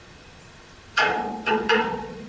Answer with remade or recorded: remade